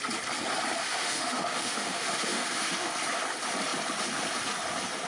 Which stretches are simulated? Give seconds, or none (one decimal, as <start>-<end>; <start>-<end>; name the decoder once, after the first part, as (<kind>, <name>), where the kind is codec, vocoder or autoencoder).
0.8-2.9 (autoencoder, DAC-VAE)